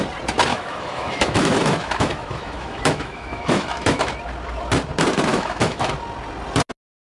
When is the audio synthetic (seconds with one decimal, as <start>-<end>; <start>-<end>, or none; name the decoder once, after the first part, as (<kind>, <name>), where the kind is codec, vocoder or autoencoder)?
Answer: 0.5-4.1 (autoencoder, DAC-VAE); 5.3-5.9